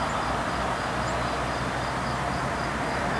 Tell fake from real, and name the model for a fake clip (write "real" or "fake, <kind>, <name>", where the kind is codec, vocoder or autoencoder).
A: real